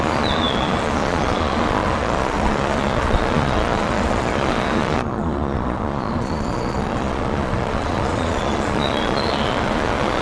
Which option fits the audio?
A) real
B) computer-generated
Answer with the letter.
B